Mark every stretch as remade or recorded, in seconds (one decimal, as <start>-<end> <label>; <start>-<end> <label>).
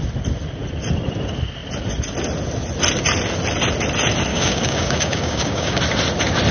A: 0.0-4.3 recorded; 4.3-5.8 remade; 5.8-6.5 recorded